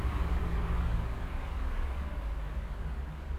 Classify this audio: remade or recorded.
remade